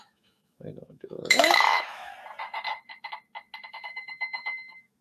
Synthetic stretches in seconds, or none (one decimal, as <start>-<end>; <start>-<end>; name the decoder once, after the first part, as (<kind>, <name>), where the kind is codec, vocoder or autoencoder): 0.0-2.1 (autoencoder, DAC-VAE); 3.7-5.0

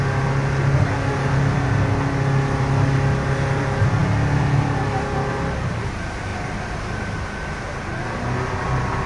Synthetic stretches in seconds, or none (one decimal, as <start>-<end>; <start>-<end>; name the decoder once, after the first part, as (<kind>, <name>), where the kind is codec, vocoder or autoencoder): none

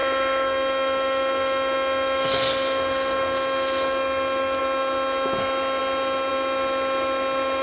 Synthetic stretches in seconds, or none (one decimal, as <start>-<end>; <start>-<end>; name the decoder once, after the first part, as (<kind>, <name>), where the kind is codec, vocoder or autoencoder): none

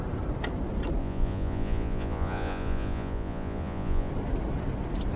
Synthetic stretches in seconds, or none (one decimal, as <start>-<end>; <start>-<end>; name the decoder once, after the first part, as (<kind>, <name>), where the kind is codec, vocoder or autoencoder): 1.0-4.1 (vocoder, Vocos)

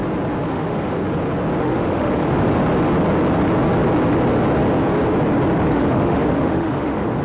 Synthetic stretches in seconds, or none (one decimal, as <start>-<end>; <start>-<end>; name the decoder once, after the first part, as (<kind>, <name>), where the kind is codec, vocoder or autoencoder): 0.5-1.0 (autoencoder, DAC-VAE); 1.6-2.6; 5.7-7.2

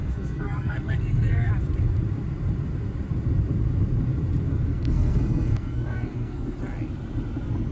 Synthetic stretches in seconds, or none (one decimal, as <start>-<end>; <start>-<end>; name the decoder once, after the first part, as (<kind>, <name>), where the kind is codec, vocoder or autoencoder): 0.0-1.5 (codec, SNAC); 4.5-6.6

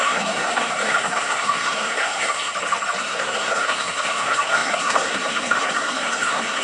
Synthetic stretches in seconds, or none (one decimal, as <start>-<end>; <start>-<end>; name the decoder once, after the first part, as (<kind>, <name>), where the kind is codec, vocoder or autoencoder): 0.0-2.5 (codec, SNAC); 3.0-6.6

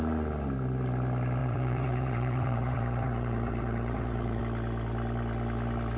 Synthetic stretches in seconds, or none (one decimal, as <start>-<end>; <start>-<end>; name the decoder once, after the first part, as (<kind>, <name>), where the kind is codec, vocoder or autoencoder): 1.4-4.4 (vocoder, Vocos)